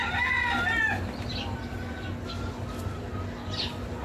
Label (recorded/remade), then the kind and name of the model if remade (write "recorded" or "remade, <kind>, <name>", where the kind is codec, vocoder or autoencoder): recorded